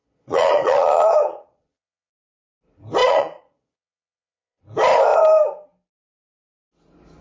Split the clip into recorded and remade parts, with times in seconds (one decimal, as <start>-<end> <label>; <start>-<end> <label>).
0.0-2.1 remade; 2.1-3.0 recorded; 3.0-4.6 remade; 4.6-7.2 recorded